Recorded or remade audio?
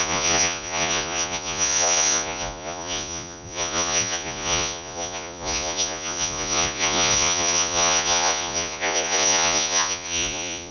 remade